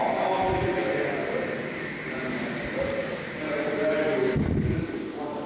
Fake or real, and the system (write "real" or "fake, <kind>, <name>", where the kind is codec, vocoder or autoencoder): real